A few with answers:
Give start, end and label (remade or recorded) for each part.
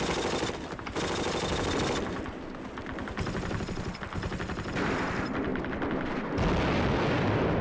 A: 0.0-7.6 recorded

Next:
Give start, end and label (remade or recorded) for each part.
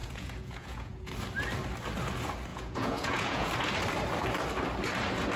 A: 0.0-1.1 remade; 1.1-2.5 recorded; 2.5-3.5 remade; 3.5-5.4 recorded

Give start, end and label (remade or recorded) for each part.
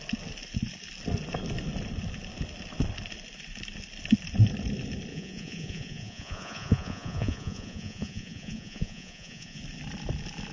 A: 0.0-5.1 recorded; 5.1-9.6 remade; 9.6-10.5 recorded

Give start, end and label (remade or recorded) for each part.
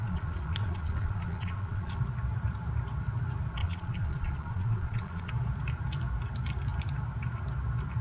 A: 0.0-2.0 remade; 2.0-3.6 recorded; 3.6-5.3 remade; 5.3-8.0 recorded